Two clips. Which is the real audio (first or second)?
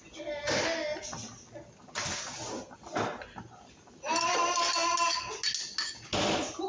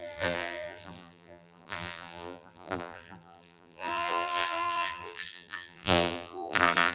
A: first